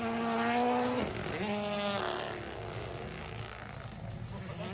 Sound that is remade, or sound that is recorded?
recorded